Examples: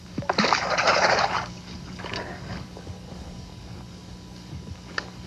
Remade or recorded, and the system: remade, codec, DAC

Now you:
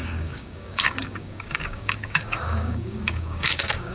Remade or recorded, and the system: remade, codec, DAC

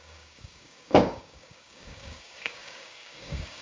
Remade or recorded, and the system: remade, codec, DAC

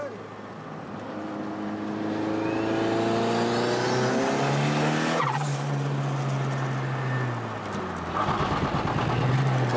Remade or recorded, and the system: recorded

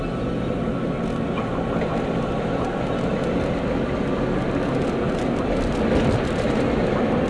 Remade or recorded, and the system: recorded